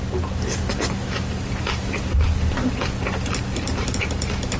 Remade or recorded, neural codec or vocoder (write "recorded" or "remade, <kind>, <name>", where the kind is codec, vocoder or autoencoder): recorded